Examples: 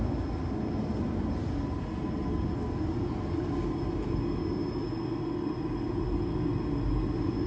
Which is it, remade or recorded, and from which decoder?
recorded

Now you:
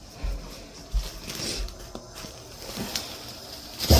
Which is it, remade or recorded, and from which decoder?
recorded